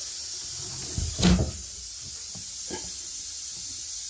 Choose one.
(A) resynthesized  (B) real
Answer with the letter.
B